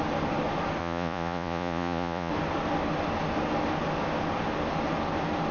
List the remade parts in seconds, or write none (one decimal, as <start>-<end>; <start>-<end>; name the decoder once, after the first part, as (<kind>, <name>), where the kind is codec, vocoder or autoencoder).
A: 0.8-2.3 (vocoder, Vocos)